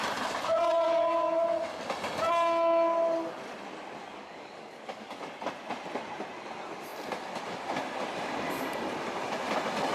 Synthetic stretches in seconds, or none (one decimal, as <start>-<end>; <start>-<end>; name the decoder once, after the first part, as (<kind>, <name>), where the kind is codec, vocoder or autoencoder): 4.0-5.2 (codec, DAC)